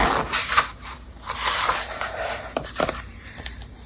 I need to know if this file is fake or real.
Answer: fake